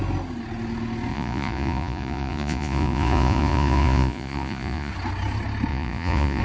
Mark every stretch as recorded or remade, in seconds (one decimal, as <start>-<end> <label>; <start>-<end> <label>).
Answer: 0.0-1.1 recorded; 1.1-4.9 remade; 4.9-5.7 recorded; 5.7-6.4 remade